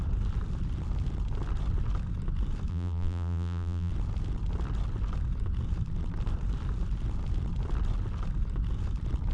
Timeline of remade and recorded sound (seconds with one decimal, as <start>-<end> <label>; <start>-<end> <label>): 0.0-2.7 recorded; 2.7-3.9 remade; 3.9-9.3 recorded